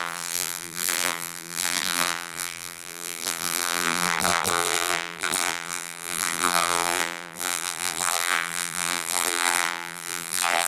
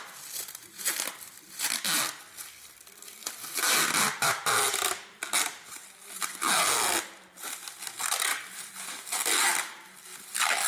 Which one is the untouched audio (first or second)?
second